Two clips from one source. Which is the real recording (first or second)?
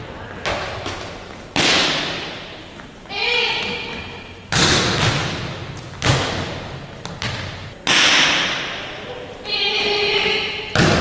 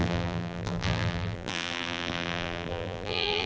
first